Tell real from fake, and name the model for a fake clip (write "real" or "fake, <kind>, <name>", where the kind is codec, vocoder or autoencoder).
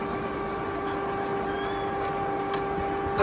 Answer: real